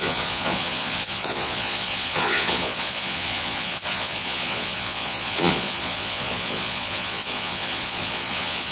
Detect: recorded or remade remade